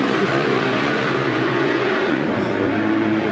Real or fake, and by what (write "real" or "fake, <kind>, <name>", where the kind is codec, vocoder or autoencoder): fake, vocoder, Vocos